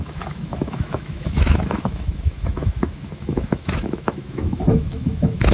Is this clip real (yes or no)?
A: no